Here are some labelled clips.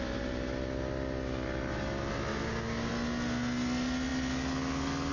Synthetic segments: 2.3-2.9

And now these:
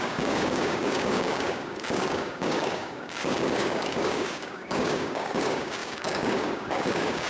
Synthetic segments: 0.0-7.3